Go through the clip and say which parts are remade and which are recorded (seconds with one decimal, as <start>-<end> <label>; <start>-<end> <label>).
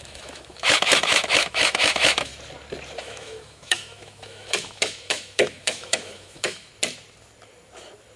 0.0-2.3 remade; 2.3-3.0 recorded; 3.0-6.7 remade; 6.7-8.2 recorded